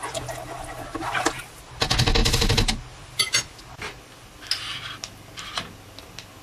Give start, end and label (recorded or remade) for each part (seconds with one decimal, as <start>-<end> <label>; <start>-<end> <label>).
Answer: 0.0-6.4 recorded